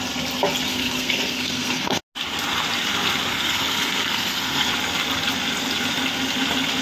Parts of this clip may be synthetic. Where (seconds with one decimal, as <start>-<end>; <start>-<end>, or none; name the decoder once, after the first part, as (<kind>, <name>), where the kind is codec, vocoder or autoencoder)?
0.7-2.0 (codec, SNAC); 3.3-4.7